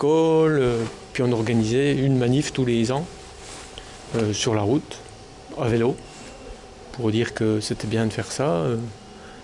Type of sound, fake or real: real